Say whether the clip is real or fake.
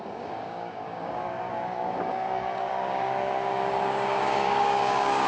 fake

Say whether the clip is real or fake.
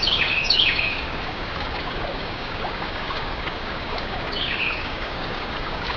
fake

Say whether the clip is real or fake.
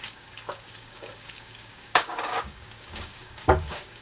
fake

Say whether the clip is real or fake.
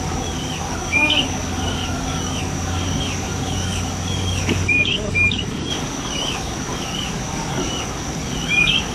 fake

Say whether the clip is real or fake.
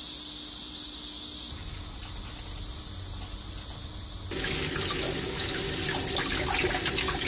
real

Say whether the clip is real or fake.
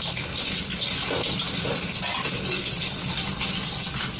real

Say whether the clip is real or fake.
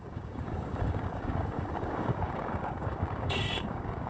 fake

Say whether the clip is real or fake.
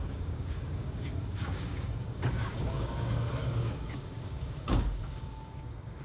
fake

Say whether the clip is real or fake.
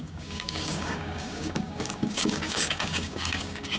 fake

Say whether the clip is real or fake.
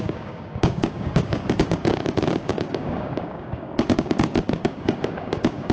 fake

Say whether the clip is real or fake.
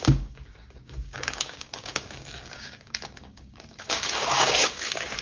fake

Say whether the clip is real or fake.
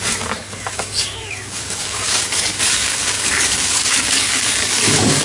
fake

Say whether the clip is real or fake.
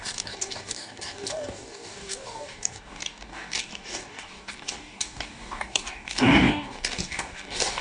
fake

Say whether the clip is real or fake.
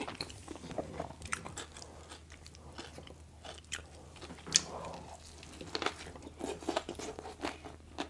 real